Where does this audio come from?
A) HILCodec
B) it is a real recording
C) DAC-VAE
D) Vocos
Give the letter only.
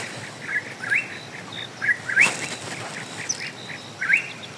B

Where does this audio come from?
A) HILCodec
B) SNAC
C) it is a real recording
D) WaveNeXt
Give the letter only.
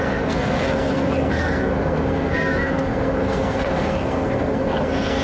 B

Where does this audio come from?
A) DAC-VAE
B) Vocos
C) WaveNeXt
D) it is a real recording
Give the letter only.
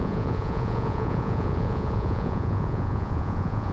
B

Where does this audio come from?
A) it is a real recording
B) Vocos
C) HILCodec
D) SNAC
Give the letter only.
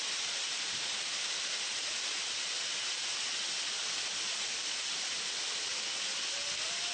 A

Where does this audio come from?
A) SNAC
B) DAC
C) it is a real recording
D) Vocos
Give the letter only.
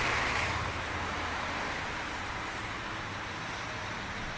C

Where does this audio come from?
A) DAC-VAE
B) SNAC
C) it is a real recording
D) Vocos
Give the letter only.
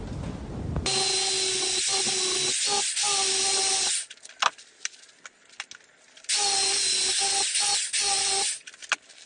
C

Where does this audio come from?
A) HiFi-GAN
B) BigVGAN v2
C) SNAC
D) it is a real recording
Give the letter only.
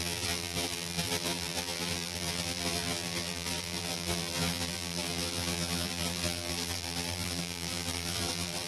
B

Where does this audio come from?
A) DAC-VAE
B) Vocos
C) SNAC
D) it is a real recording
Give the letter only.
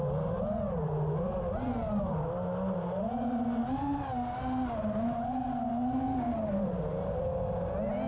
D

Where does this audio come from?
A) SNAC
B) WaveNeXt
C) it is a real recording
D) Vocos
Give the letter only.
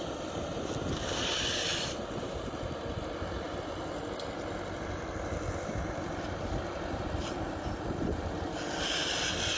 C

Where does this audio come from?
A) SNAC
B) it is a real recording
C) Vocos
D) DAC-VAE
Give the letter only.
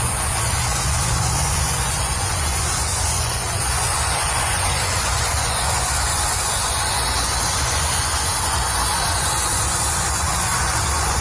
C